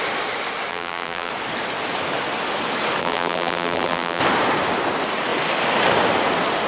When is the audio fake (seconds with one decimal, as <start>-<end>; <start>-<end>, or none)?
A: 0.7-1.3; 3.0-4.2